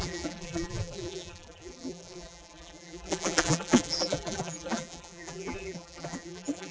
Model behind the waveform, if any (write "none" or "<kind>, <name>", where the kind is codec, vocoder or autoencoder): vocoder, BigVGAN v2